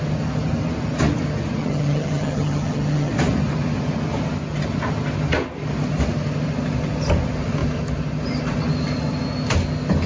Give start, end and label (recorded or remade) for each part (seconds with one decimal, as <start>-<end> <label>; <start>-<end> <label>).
0.0-1.6 recorded; 1.6-3.1 remade; 3.1-10.1 recorded